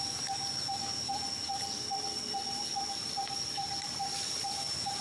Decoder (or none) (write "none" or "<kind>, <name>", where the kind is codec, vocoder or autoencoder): none